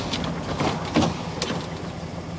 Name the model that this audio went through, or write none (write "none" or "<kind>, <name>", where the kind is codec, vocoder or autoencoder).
none